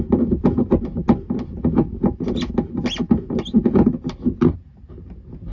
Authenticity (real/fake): real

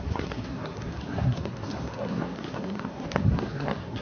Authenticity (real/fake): fake